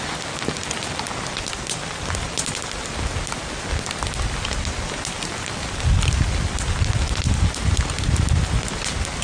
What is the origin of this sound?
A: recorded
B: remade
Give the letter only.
A